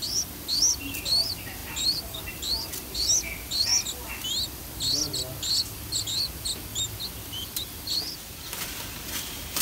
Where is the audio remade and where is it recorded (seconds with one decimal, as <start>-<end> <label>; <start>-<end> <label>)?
0.0-9.6 recorded